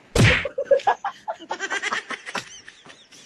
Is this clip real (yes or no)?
yes